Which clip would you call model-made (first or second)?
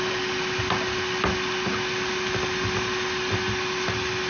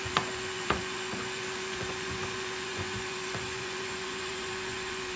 second